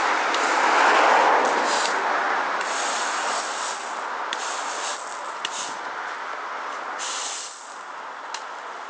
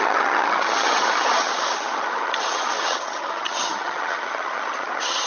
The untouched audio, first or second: first